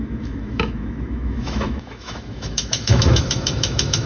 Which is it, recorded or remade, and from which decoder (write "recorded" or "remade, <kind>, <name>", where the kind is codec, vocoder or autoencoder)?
remade, autoencoder, DAC-VAE